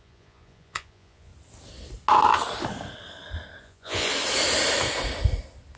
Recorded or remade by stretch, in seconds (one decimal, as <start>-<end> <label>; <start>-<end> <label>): 0.0-1.3 remade; 1.3-3.6 recorded; 3.6-4.1 remade; 4.1-5.8 recorded

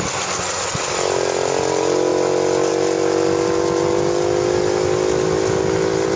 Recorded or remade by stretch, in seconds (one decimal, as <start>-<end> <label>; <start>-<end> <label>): 0.0-6.2 recorded

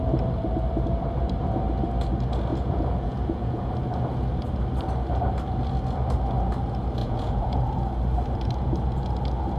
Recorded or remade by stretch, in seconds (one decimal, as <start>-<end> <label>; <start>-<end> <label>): 0.0-2.5 recorded; 2.5-3.7 remade; 3.7-7.0 recorded; 7.0-7.6 remade; 7.6-9.6 recorded

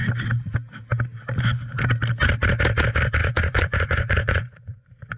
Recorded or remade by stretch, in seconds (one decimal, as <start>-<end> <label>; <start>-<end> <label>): 0.0-3.2 recorded; 3.2-5.2 remade

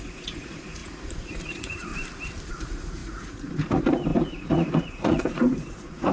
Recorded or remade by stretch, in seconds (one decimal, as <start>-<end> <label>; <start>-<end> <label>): 0.0-1.9 remade; 1.9-2.5 recorded; 2.5-6.1 remade

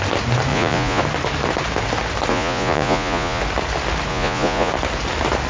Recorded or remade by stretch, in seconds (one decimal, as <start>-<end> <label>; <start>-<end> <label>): 0.0-0.5 recorded; 0.5-1.0 remade; 1.0-2.3 recorded; 2.3-3.4 remade; 3.4-4.1 recorded; 4.1-4.7 remade; 4.7-5.5 recorded

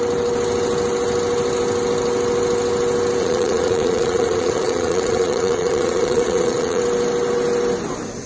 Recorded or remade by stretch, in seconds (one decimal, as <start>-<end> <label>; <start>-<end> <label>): 0.0-3.2 recorded; 3.2-6.8 remade; 6.8-8.3 recorded

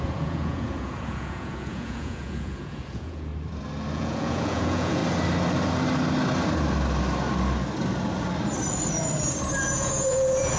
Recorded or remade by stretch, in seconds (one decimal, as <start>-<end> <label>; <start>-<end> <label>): 0.0-3.3 remade; 3.3-3.9 recorded; 3.9-5.0 remade; 5.0-9.6 recorded; 9.6-10.6 remade